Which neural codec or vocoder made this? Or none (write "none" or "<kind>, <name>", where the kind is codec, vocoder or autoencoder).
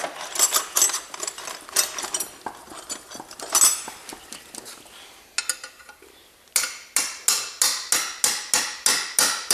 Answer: none